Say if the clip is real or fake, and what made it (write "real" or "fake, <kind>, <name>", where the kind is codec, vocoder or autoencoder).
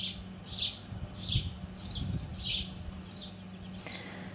real